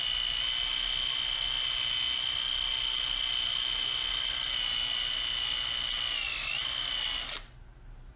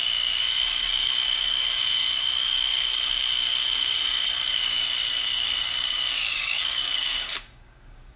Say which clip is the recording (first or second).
first